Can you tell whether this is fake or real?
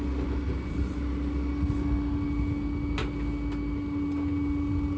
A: real